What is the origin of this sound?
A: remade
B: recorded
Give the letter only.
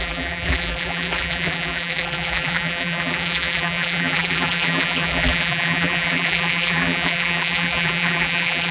A